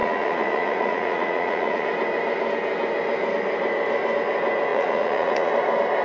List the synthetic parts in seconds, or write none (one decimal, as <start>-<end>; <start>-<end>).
0.0-1.9; 4.7-5.5